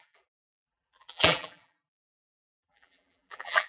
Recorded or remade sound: remade